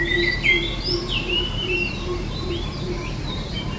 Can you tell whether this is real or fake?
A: fake